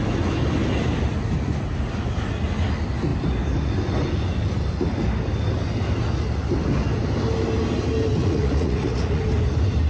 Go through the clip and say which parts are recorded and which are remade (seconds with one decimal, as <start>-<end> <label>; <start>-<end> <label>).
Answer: 0.0-8.2 recorded; 8.2-9.2 remade; 9.2-9.9 recorded